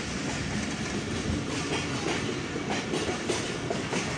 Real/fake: real